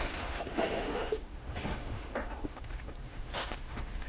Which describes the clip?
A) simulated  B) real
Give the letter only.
A